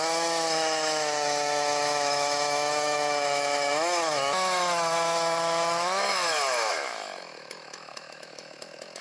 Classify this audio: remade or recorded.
remade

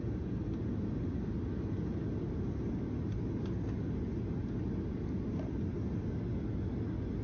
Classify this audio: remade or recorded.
recorded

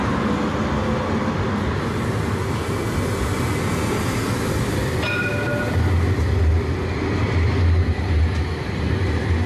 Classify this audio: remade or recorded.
recorded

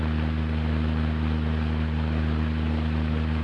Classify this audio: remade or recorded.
recorded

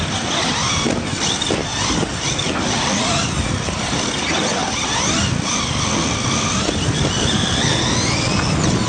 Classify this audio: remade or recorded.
recorded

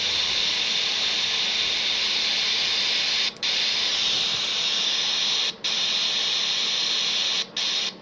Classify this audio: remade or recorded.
recorded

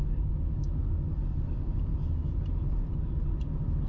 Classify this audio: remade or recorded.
recorded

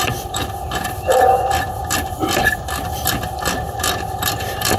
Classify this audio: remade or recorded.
remade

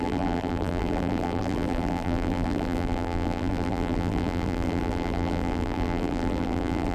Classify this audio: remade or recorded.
remade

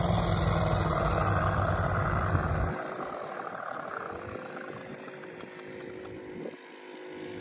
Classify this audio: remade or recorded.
recorded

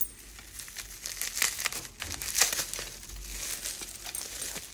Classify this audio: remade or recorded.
recorded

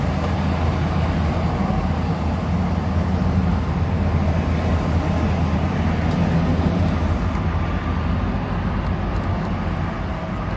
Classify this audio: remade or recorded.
recorded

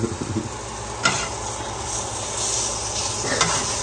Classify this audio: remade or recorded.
recorded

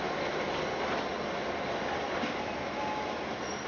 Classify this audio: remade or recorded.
recorded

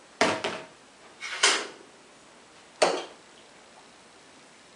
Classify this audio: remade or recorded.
recorded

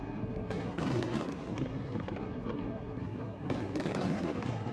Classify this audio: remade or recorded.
remade